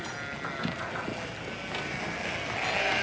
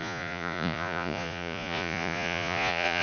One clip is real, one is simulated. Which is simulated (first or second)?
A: second